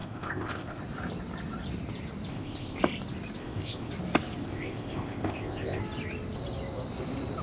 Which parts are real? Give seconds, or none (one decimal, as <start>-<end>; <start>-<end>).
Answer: 0.8-2.3; 2.8-3.4; 3.9-4.4; 5.8-7.4